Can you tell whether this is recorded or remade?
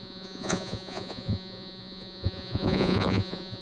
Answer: remade